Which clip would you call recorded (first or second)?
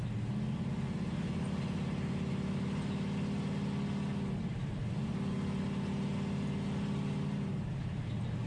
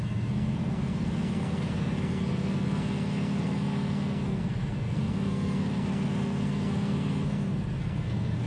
first